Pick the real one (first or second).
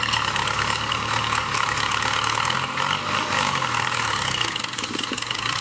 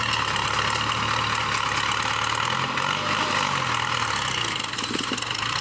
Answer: second